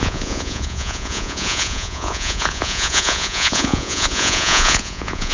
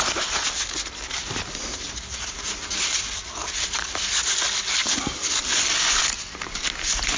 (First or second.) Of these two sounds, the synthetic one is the first